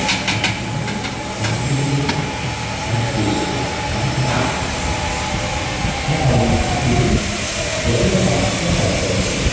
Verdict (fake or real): real